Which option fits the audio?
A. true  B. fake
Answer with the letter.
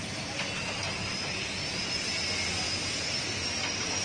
A